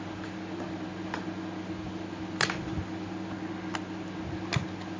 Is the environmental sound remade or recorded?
recorded